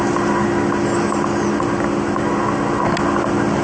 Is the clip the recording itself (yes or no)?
yes